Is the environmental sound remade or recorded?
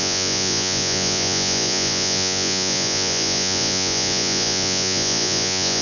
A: remade